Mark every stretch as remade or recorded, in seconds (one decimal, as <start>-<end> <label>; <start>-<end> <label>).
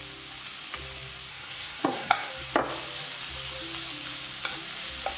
0.0-1.3 recorded; 1.3-2.3 remade; 2.3-5.2 recorded